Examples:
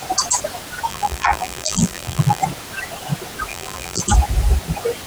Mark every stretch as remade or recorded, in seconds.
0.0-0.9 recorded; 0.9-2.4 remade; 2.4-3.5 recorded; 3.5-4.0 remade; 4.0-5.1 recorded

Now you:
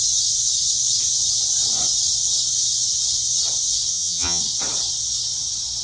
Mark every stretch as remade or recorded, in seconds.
0.0-3.9 recorded; 3.9-4.4 remade; 4.4-5.8 recorded

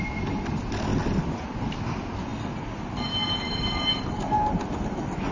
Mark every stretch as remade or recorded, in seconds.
0.0-0.9 recorded; 0.9-1.6 remade; 1.6-5.3 recorded

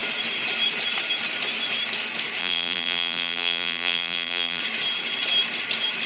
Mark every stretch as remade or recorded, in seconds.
0.0-2.4 recorded; 2.4-4.6 remade; 4.6-6.1 recorded

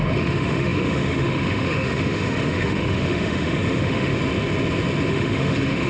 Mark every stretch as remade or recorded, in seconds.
0.0-4.1 remade; 4.1-5.1 recorded; 5.1-5.9 remade

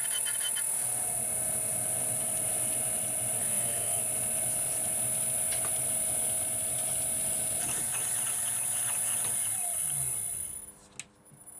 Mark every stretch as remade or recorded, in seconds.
0.0-3.4 recorded; 3.4-4.0 remade; 4.0-11.6 recorded